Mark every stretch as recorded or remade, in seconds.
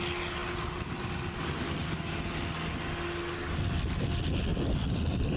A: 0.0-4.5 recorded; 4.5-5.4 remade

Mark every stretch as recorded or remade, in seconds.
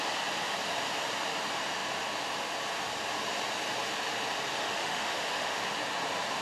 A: 0.0-4.6 recorded; 4.6-5.6 remade; 5.6-6.4 recorded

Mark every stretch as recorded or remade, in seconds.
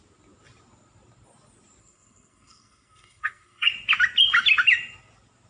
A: 0.0-1.8 recorded; 1.8-3.7 remade; 3.7-5.5 recorded